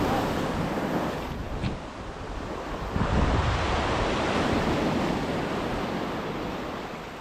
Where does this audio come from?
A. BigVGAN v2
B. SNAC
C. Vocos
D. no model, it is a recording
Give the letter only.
D